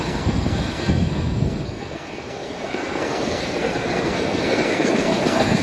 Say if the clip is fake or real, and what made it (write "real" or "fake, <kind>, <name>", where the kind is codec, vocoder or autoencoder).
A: fake, codec, SNAC